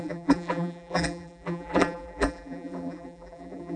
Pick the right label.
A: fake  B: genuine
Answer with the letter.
A